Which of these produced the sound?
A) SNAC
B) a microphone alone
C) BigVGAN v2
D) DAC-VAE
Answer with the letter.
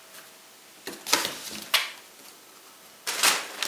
B